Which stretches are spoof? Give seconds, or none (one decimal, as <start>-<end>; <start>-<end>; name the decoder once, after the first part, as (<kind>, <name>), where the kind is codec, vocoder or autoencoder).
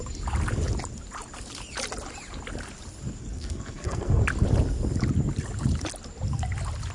3.2-4.2 (codec, SNAC)